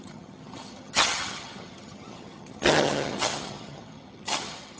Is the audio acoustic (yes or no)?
no